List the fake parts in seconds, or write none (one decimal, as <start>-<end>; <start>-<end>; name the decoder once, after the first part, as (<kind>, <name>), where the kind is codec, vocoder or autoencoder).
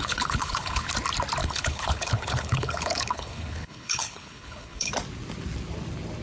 0.0-0.9 (codec, HILCodec); 1.4-4.9